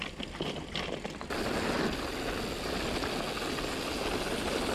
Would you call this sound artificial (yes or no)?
no